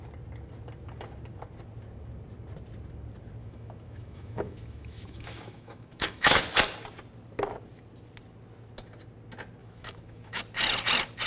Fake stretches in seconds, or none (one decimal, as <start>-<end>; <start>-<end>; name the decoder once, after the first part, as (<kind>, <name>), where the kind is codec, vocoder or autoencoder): 3.4-6.4 (autoencoder, DAC-VAE); 9.6-10.4